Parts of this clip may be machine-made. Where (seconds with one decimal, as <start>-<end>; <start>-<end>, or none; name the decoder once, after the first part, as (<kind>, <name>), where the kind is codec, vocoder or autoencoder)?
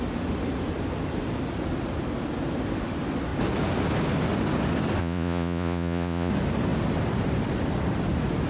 5.0-6.3 (vocoder, Vocos)